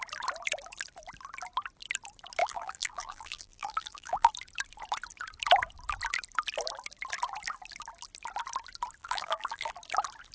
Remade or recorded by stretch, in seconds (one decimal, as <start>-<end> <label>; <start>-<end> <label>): 0.0-2.4 recorded; 2.4-4.3 remade; 4.3-9.0 recorded; 9.0-9.7 remade; 9.7-10.3 recorded